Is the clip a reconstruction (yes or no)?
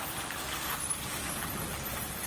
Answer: no